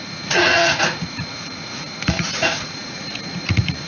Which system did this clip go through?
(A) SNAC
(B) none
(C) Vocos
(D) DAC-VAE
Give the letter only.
C